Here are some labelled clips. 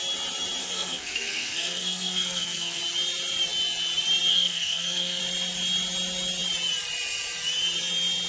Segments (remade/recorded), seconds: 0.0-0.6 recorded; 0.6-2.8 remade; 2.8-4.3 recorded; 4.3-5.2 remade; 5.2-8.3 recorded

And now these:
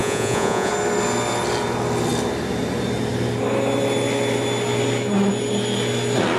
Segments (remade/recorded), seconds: 0.0-0.7 remade; 0.7-6.4 recorded

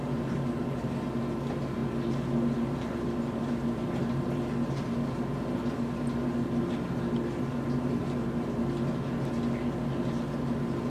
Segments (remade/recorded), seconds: 0.0-10.9 recorded

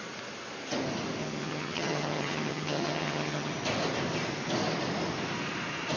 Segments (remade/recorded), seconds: 0.0-1.2 recorded; 1.2-3.5 remade; 3.5-6.0 recorded

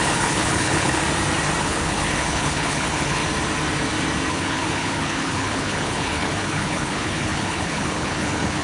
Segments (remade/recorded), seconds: 0.0-1.0 remade; 1.0-1.6 recorded; 1.6-3.2 remade; 3.2-4.3 recorded; 4.3-8.6 remade

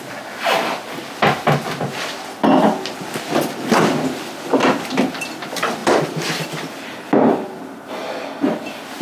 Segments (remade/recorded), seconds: 0.0-9.0 recorded

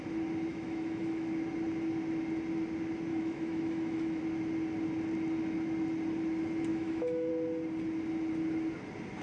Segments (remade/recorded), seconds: 0.0-0.5 recorded; 0.5-1.3 remade; 1.3-3.1 recorded; 3.1-4.2 remade; 4.2-6.7 recorded; 6.7-7.3 remade; 7.3-9.2 recorded

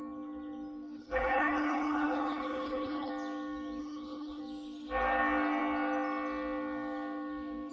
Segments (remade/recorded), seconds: 0.0-1.0 recorded; 1.0-3.1 remade; 3.1-3.8 recorded; 3.8-4.4 remade; 4.4-7.7 recorded